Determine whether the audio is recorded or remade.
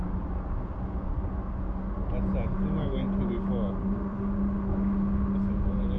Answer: recorded